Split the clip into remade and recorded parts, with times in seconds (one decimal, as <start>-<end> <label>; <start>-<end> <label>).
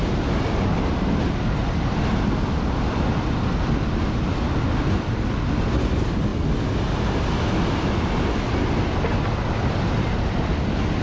0.0-11.0 recorded